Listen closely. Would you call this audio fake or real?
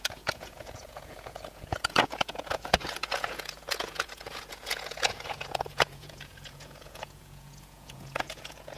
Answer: fake